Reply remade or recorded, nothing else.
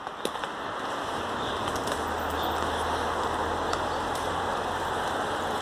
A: recorded